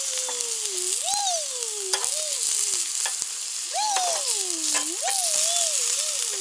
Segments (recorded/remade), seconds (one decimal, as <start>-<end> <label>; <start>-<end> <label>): 0.0-6.4 recorded